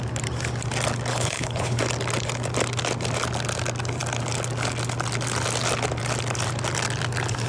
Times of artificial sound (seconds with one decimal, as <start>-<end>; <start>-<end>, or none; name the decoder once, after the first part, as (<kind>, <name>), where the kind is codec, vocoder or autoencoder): 1.1-1.8 (codec, HILCodec)